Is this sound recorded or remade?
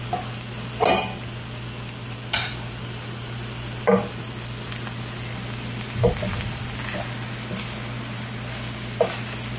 recorded